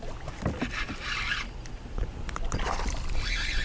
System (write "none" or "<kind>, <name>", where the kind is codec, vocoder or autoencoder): vocoder, BigVGAN v2